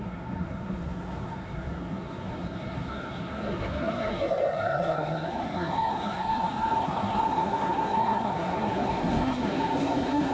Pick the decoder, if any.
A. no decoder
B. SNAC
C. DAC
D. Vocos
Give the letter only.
B